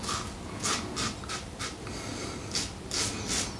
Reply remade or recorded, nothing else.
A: recorded